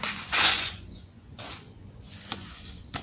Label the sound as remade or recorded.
remade